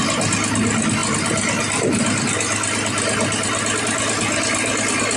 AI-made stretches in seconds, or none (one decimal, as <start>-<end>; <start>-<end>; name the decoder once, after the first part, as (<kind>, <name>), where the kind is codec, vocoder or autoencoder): none